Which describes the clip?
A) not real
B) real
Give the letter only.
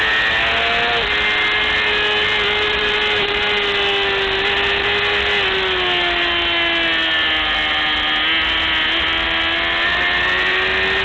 B